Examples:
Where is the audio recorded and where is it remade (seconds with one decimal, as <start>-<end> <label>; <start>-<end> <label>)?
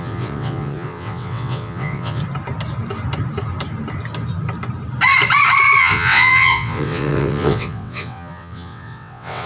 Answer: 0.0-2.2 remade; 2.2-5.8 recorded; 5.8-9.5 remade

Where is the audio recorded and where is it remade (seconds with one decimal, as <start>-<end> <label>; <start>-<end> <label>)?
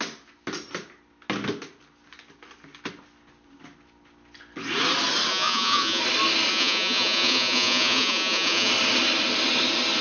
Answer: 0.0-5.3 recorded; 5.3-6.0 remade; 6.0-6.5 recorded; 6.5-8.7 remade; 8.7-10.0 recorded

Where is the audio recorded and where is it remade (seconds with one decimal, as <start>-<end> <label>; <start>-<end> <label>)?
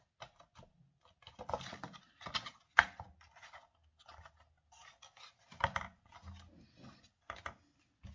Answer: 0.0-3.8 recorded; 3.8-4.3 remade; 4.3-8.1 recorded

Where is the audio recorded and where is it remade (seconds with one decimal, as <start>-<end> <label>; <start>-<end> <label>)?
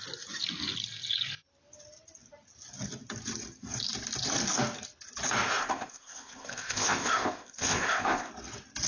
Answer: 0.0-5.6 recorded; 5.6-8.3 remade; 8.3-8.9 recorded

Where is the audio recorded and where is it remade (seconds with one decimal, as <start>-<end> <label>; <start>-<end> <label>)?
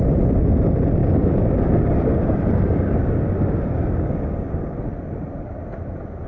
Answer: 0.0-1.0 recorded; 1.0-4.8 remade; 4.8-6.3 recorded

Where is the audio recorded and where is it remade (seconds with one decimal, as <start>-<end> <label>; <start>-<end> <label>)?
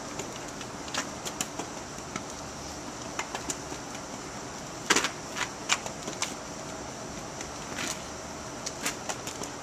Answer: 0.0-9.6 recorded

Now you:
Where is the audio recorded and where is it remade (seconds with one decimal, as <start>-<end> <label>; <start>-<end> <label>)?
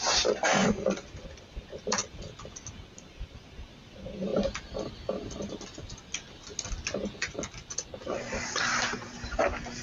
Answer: 0.0-2.0 remade; 2.0-2.9 recorded; 2.9-4.3 remade; 4.3-8.7 recorded; 8.7-9.8 remade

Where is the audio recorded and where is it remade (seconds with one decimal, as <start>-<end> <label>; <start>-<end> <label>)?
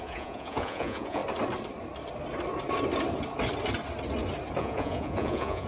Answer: 0.0-1.2 remade; 1.2-4.6 recorded; 4.6-5.7 remade